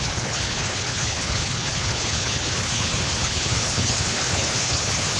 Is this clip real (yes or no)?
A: no